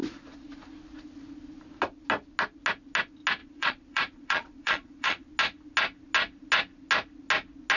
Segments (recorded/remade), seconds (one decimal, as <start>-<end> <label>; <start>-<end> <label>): 0.0-3.4 recorded; 3.4-5.3 remade; 5.3-7.8 recorded